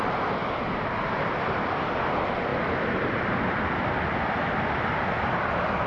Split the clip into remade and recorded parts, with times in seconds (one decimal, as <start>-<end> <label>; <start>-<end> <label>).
0.0-5.9 recorded